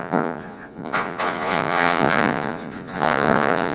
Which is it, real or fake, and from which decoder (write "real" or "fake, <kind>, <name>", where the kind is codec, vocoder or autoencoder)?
fake, vocoder, Vocos